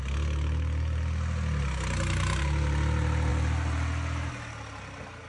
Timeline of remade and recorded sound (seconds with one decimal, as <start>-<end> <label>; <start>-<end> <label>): 0.0-5.3 recorded